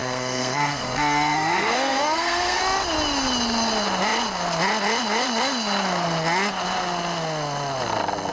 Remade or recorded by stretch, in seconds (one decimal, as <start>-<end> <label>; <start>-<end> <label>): 0.0-2.6 remade; 2.6-8.3 recorded